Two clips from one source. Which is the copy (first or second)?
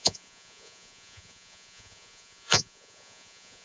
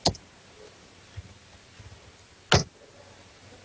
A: first